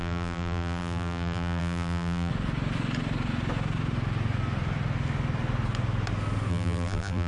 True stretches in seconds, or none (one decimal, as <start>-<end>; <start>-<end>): 2.3-6.5